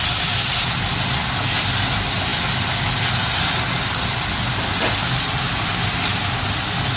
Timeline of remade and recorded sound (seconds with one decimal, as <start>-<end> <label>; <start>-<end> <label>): 0.0-7.0 recorded